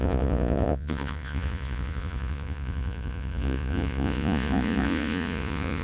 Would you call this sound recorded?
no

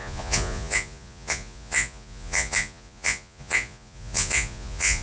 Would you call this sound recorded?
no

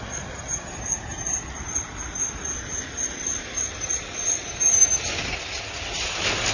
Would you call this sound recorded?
yes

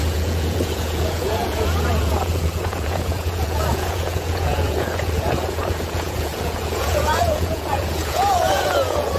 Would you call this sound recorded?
no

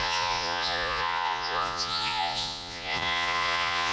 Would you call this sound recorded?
no